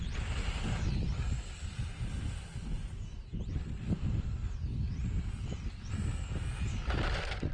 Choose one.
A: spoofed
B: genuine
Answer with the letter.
B